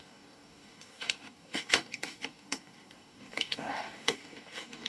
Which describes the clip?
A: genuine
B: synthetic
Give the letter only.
B